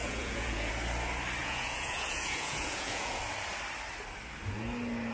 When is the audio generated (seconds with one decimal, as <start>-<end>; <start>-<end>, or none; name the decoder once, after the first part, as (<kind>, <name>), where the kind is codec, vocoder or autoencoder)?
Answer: 0.0-0.7 (vocoder, Vocos); 1.4-3.2